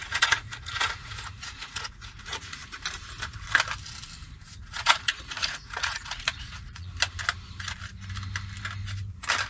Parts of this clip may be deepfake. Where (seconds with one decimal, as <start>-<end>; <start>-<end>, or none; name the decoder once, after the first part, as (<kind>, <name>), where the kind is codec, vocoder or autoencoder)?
0.0-2.6 (vocoder, Vocos); 4.6-6.9